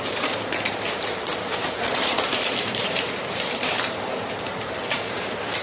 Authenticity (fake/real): fake